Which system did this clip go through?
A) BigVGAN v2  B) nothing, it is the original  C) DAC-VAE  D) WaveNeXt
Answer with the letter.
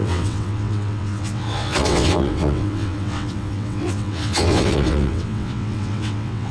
D